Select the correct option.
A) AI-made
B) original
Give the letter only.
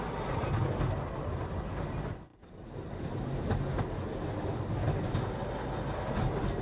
B